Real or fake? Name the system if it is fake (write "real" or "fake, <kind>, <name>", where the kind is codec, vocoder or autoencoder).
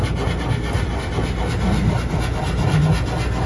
real